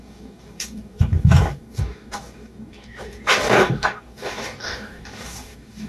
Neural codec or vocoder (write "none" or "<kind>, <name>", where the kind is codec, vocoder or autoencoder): codec, DAC